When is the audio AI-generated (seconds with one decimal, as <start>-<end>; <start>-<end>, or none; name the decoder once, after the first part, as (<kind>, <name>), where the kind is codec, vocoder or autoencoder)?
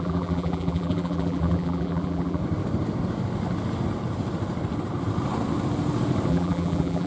0.0-2.4 (vocoder, BigVGAN v2); 6.3-7.1